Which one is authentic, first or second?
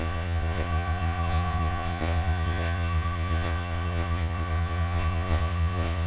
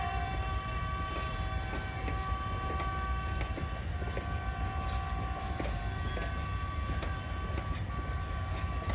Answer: second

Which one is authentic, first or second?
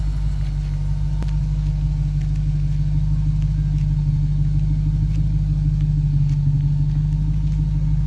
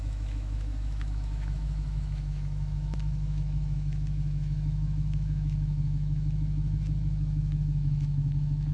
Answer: first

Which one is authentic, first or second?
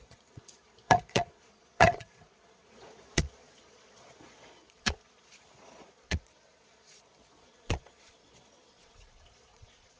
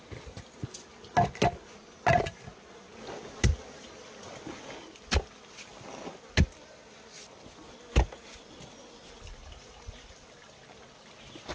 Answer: second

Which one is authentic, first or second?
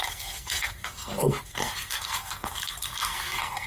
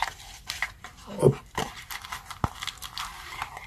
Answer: second